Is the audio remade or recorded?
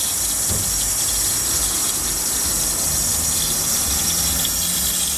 recorded